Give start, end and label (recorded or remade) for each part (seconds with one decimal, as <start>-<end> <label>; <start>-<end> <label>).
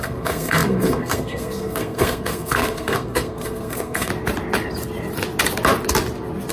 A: 0.0-4.1 remade; 4.1-6.5 recorded